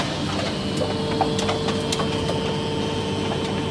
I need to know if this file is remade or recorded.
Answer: recorded